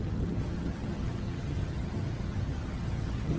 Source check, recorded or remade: remade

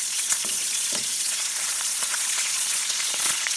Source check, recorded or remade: remade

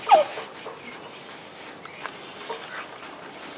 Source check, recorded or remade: recorded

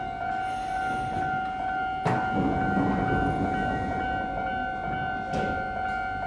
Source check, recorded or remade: recorded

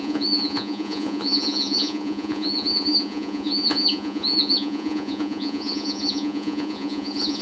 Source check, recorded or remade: remade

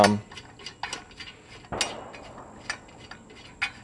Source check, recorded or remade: recorded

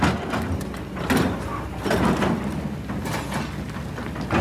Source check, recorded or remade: recorded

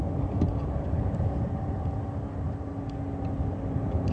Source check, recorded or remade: recorded